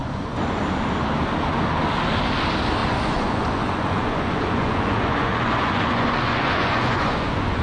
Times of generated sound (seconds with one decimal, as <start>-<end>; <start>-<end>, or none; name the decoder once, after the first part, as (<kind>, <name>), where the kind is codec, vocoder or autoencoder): 0.0-0.6 (vocoder, Vocos); 2.8-7.6